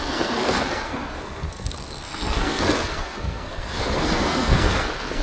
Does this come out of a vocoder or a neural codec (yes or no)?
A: yes